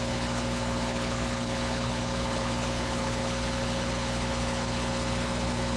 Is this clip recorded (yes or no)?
no